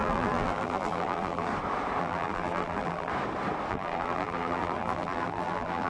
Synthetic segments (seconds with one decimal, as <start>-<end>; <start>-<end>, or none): 0.0-1.5; 2.0-3.1; 3.7-5.9